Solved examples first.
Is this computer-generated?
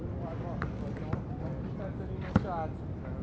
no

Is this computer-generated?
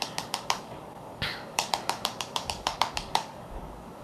yes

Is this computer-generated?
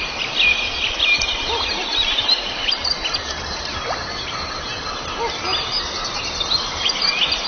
yes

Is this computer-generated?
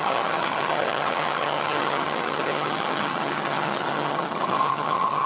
yes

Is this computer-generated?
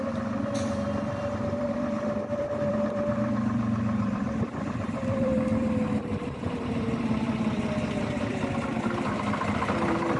yes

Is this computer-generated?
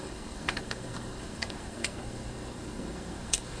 yes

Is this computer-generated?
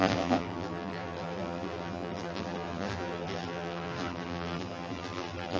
yes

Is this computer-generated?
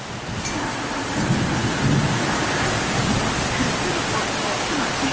no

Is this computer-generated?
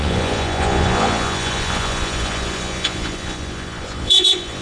yes